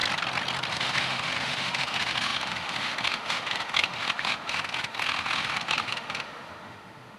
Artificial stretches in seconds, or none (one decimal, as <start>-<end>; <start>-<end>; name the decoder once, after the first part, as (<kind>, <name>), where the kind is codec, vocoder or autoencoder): 0.7-7.2 (autoencoder, DAC-VAE)